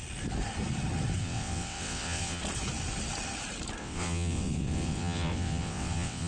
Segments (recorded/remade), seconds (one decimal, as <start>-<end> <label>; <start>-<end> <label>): 0.0-1.2 recorded; 1.2-2.4 remade; 2.4-3.8 recorded; 3.8-6.3 remade